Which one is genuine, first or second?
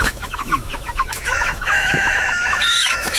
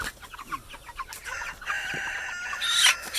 second